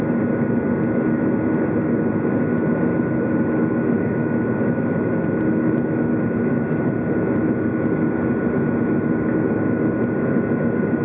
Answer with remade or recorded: recorded